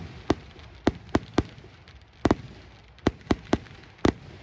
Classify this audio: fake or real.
real